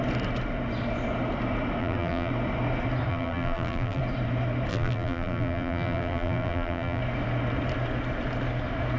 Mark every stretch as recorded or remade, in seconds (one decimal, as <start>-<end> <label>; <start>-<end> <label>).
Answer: 0.0-1.8 recorded; 1.8-2.3 remade; 2.3-3.1 recorded; 3.1-4.0 remade; 4.0-4.7 recorded; 4.7-7.0 remade; 7.0-9.0 recorded

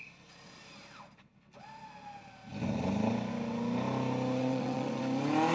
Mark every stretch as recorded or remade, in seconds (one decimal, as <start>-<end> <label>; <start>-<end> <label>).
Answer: 0.0-4.4 recorded; 4.4-5.0 remade; 5.0-5.5 recorded

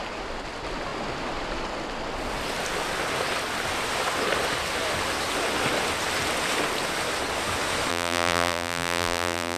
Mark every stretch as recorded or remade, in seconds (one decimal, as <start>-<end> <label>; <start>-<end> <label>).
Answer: 0.0-7.9 recorded; 7.9-9.6 remade

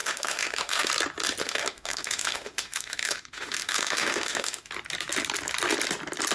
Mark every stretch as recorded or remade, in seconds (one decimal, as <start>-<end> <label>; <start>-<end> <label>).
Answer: 0.0-0.9 remade; 0.9-1.4 recorded; 1.4-4.7 remade; 4.7-6.3 recorded